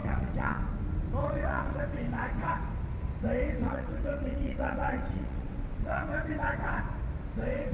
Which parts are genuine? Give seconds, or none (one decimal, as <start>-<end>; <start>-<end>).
0.6-1.2; 1.8-3.6; 6.1-7.7